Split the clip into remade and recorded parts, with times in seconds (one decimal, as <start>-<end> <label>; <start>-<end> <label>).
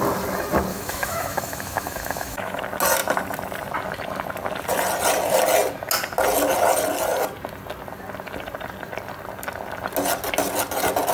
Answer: 0.0-0.7 recorded; 0.7-2.6 remade; 2.6-11.1 recorded